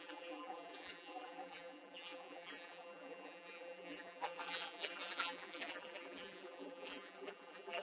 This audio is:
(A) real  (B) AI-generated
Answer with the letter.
B